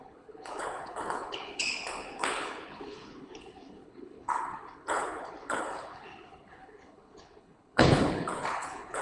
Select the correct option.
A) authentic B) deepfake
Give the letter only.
B